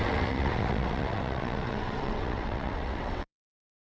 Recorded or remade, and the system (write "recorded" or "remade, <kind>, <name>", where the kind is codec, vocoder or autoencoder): remade, vocoder, WaveNeXt